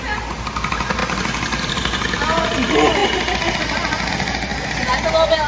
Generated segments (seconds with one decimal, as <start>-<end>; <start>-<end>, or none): none